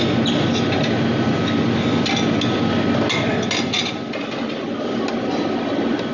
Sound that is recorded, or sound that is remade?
recorded